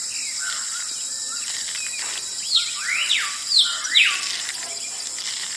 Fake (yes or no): no